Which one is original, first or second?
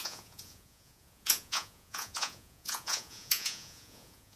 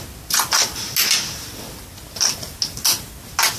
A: second